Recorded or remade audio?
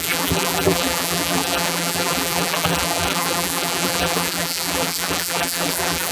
remade